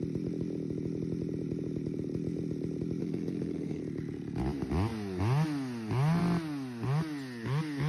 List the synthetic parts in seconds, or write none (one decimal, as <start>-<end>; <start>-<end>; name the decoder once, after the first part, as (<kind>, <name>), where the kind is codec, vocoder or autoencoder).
3.0-3.8 (autoencoder, DAC-VAE)